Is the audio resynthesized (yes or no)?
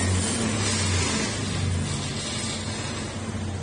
no